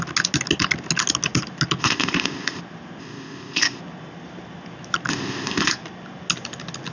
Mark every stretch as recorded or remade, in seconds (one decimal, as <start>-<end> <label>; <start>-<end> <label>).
0.0-1.8 recorded; 1.8-2.6 remade; 2.6-3.0 recorded; 3.0-3.8 remade; 3.8-5.1 recorded; 5.1-5.7 remade; 5.7-6.9 recorded